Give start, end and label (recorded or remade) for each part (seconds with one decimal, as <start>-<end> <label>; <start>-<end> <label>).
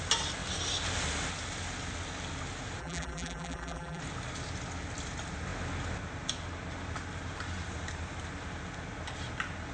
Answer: 0.0-2.8 recorded; 2.8-4.0 remade; 4.0-9.7 recorded